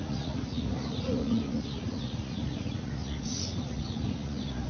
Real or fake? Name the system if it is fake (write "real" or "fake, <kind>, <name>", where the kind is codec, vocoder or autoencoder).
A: fake, vocoder, Vocos